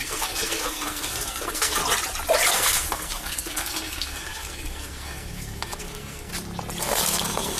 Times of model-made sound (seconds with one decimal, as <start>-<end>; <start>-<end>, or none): 0.0-1.8; 2.5-6.3; 6.8-7.6